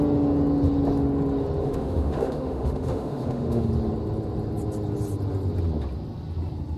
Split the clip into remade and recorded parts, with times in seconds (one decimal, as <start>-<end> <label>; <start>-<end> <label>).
0.0-1.6 recorded; 1.6-3.7 remade; 3.7-6.8 recorded